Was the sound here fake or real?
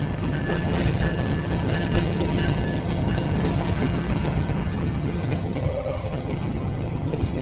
fake